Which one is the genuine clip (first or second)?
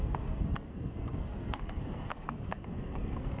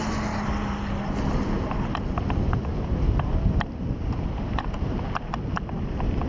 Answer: second